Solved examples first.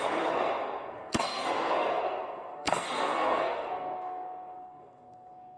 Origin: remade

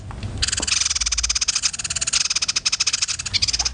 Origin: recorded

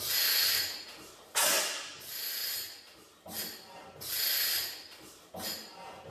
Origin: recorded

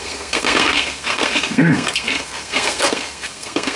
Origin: remade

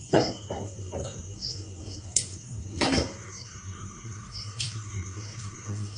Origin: remade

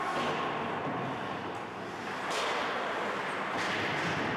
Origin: recorded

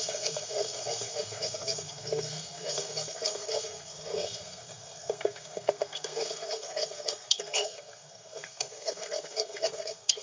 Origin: remade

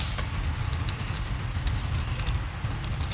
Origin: recorded